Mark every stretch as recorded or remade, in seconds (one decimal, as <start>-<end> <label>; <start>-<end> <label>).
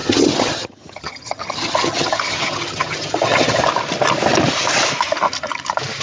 0.0-3.6 remade; 3.6-6.0 recorded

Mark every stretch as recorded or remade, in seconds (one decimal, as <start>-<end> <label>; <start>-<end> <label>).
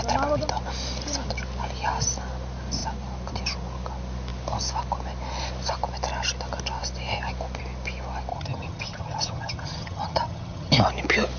0.0-8.3 recorded; 8.3-10.7 remade; 10.7-11.4 recorded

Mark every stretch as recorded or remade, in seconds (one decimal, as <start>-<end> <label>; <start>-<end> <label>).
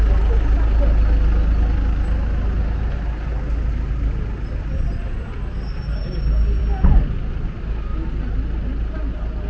0.0-9.5 recorded